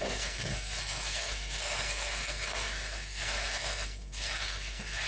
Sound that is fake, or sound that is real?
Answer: fake